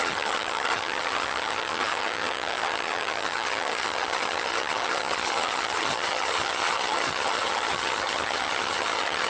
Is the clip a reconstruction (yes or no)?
yes